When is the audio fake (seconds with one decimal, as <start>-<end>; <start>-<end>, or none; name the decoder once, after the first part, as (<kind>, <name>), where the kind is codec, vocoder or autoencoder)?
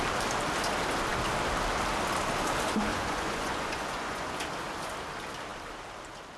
2.9-4.4 (vocoder, Vocos)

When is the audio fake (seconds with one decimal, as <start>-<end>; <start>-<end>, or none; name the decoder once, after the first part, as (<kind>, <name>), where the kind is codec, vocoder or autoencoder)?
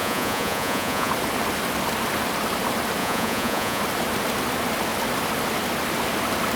0.0-1.1 (vocoder, Vocos); 3.0-3.8